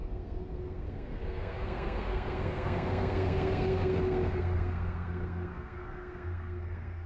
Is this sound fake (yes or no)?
yes